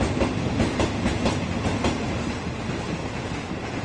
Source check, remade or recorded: recorded